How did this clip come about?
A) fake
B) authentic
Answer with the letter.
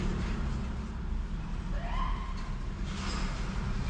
B